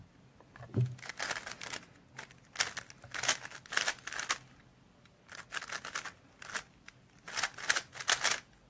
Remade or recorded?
recorded